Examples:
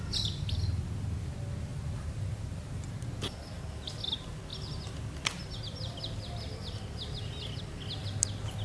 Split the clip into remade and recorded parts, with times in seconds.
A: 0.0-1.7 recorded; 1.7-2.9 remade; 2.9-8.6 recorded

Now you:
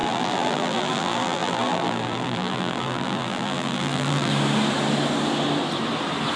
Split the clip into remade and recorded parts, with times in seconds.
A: 0.0-4.3 remade; 4.3-6.4 recorded

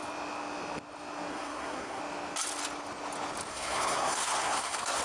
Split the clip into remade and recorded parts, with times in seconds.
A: 0.0-1.3 recorded; 1.3-2.0 remade; 2.0-3.5 recorded; 3.5-5.0 remade

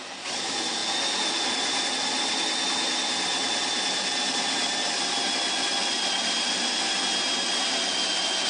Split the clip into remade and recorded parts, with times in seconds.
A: 0.0-8.5 recorded